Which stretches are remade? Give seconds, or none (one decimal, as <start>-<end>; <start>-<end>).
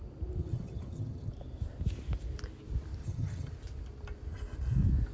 0.4-1.3; 3.0-3.5